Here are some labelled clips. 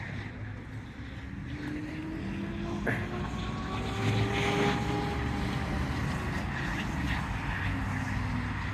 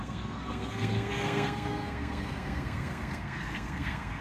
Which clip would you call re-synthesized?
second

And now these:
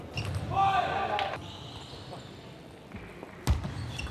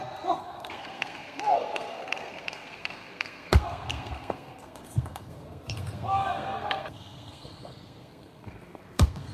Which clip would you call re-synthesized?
second